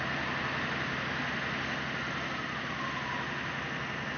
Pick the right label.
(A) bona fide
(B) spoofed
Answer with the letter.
A